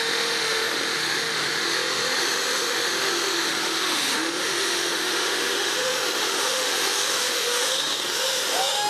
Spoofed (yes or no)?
yes